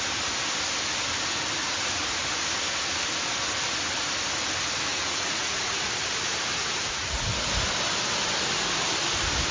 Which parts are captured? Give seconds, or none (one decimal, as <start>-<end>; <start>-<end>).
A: 0.0-1.6; 2.2-4.9; 5.9-6.5; 7.3-9.5